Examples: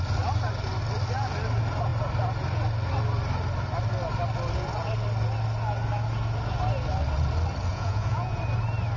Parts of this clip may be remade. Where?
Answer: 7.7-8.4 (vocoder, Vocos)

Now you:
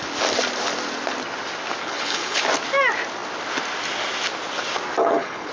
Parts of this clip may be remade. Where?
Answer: 1.8-2.4 (codec, HILCodec); 5.0-5.5